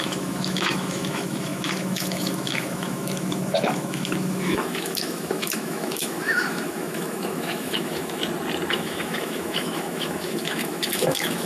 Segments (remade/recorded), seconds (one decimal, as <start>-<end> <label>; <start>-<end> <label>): 0.0-8.2 remade; 8.2-8.7 recorded; 8.7-11.5 remade